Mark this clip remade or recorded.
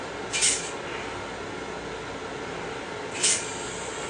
recorded